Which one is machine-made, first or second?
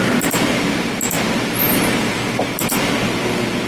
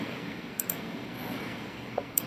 second